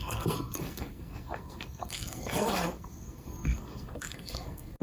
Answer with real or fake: fake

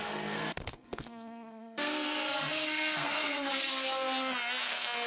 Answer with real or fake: fake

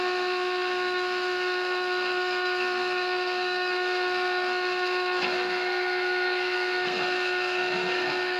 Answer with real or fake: fake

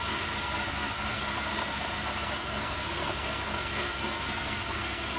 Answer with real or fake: fake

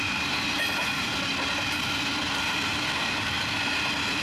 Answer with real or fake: real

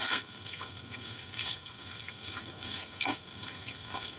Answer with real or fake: fake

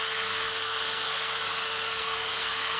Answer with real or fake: fake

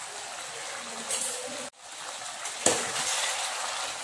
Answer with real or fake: real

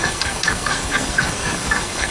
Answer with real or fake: fake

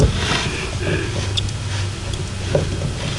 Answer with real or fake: real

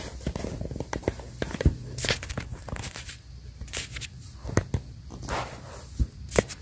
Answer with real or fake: real